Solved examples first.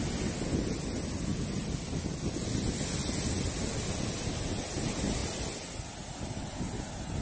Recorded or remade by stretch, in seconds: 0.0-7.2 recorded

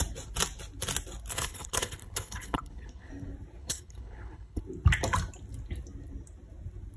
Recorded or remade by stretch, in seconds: 0.0-1.3 recorded; 1.3-3.1 remade; 3.1-3.6 recorded; 3.6-4.6 remade; 4.6-7.0 recorded

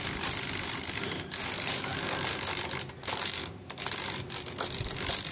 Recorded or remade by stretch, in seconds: 0.0-5.3 recorded

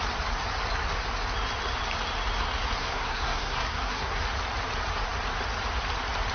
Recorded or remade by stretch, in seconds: 0.0-2.8 recorded; 2.8-4.2 remade; 4.2-6.3 recorded

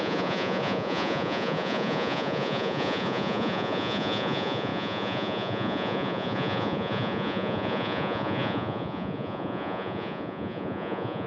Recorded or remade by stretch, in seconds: 0.0-11.3 remade

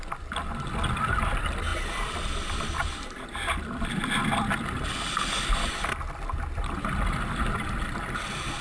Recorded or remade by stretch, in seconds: 0.0-8.6 recorded

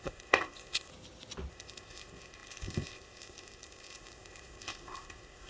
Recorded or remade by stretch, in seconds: 0.0-0.9 remade; 0.9-1.5 recorded; 1.5-5.5 remade

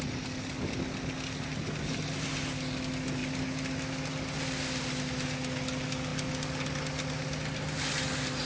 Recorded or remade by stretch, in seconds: 0.0-8.4 recorded